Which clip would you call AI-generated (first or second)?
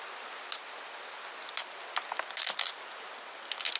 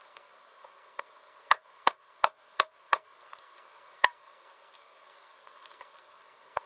second